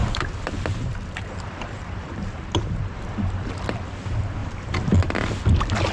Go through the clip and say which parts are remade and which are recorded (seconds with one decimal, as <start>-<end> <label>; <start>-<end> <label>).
0.0-3.5 remade; 3.5-5.9 recorded